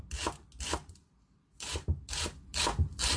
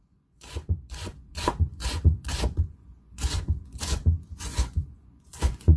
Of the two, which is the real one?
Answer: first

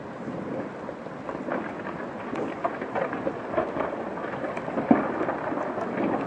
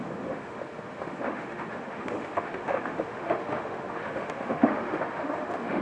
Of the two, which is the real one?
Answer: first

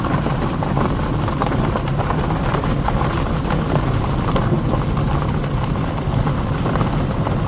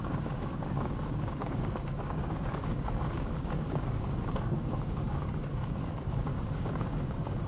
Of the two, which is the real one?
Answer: first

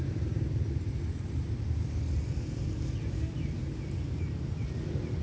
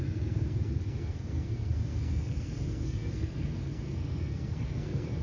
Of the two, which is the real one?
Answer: first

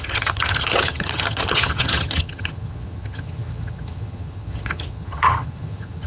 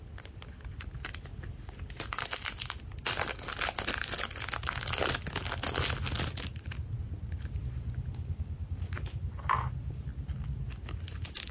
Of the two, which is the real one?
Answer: second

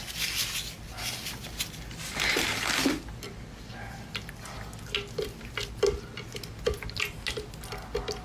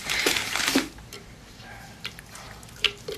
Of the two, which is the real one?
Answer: first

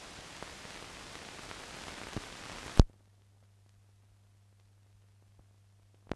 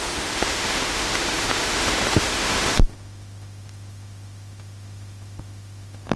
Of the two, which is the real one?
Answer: first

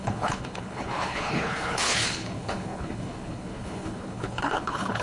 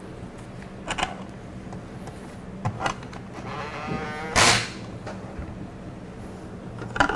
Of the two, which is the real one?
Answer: second